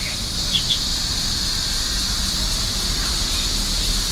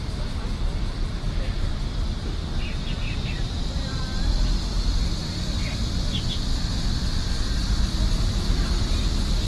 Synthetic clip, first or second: second